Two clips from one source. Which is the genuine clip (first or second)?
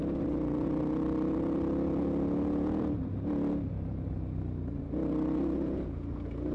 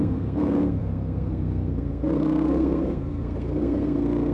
first